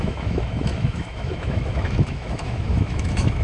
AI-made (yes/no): yes